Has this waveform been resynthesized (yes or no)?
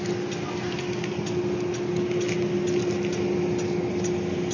no